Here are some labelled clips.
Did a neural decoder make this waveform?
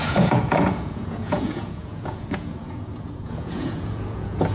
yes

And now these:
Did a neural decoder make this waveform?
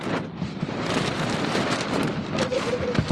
no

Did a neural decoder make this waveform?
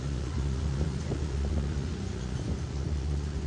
yes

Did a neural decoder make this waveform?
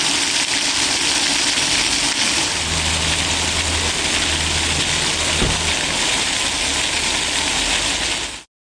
no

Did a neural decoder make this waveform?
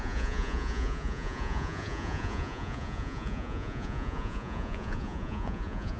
yes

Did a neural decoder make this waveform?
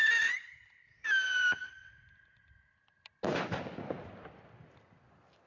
no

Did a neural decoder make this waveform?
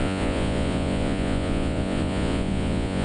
yes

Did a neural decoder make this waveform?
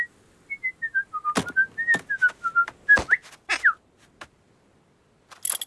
no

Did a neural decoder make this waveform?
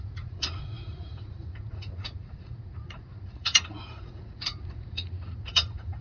yes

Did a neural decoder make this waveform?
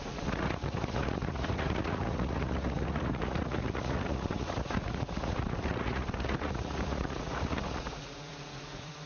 yes